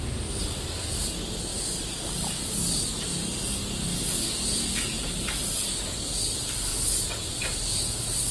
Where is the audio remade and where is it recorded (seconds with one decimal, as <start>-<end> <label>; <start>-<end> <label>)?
0.0-6.7 recorded; 6.7-7.6 remade; 7.6-8.3 recorded